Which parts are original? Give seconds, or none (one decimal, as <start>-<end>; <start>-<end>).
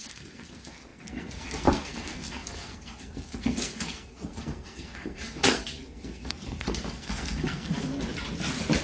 7.9-8.8